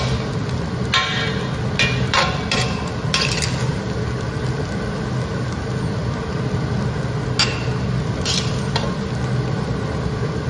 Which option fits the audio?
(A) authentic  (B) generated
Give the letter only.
A